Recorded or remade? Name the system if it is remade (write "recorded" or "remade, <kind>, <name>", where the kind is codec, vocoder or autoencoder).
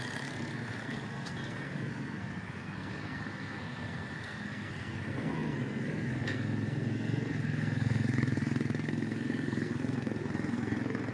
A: remade, codec, SNAC